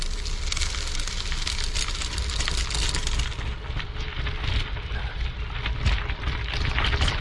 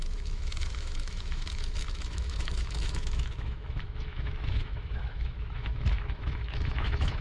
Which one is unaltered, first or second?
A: first